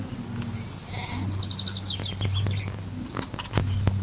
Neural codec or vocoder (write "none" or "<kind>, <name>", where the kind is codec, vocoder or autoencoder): none